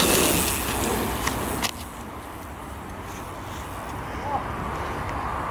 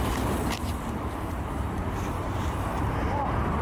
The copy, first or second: second